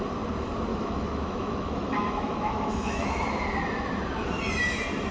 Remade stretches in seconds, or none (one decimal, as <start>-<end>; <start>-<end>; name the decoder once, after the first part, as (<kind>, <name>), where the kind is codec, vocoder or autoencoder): 0.7-3.2 (autoencoder, DAC-VAE)